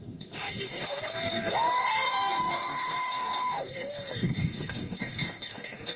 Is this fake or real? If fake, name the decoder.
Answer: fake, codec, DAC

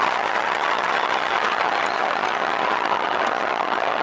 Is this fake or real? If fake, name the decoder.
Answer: fake, vocoder, HiFi-GAN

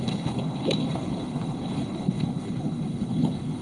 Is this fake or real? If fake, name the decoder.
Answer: fake, codec, HILCodec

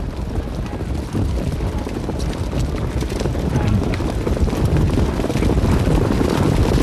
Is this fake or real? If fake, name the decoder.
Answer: real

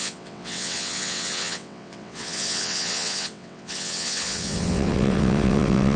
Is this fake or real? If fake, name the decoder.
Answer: fake, vocoder, WaveNeXt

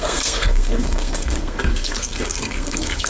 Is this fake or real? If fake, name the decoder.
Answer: fake, codec, SNAC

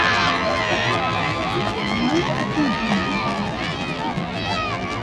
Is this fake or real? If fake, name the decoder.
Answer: fake, vocoder, BigVGAN v2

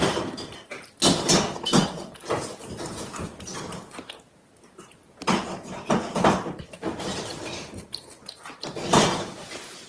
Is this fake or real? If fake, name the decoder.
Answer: real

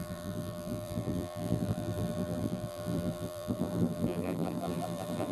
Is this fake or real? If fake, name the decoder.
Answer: fake, vocoder, BigVGAN v2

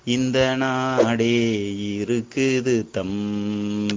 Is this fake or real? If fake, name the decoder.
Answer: real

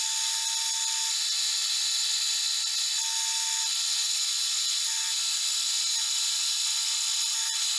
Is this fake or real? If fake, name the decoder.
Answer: real